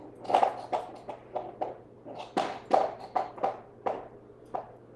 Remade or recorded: recorded